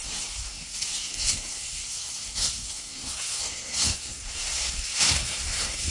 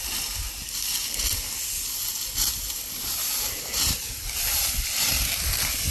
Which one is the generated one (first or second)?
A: first